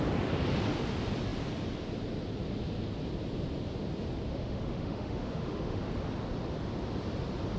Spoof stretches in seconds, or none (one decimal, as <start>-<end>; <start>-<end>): 4.3-5.9